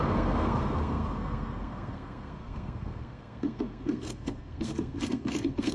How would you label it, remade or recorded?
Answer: remade